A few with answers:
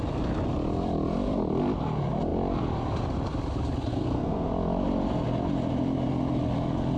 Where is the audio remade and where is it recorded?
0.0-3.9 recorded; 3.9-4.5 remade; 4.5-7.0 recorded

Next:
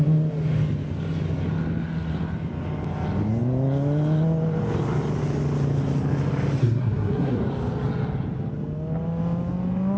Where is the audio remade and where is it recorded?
0.0-6.6 recorded; 6.6-7.4 remade; 7.4-10.0 recorded

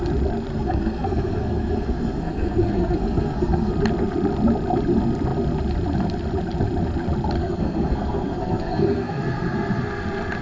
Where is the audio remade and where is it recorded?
0.0-0.5 recorded; 0.5-3.7 remade; 3.7-7.4 recorded; 7.4-9.8 remade; 9.8-10.4 recorded

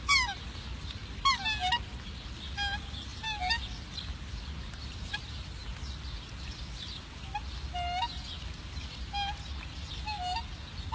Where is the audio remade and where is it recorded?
0.0-10.9 recorded

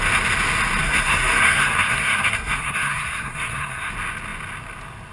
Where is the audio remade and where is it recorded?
0.0-0.8 recorded; 0.8-3.9 remade; 3.9-5.1 recorded

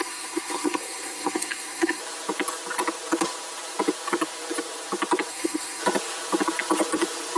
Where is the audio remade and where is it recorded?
0.0-2.0 remade; 2.0-5.3 recorded; 5.3-5.8 remade; 5.8-7.4 recorded